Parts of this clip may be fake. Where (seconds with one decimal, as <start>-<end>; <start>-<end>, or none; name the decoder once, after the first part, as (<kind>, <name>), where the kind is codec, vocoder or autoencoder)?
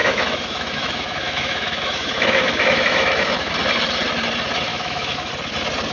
0.0-3.5 (autoencoder, DAC-VAE); 4.7-5.3